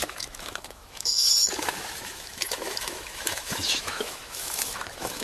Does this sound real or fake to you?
fake